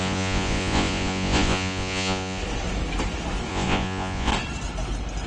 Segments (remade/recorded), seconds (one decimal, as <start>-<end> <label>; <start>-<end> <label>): 0.0-2.4 remade; 2.4-3.5 recorded; 3.5-4.3 remade; 4.3-5.3 recorded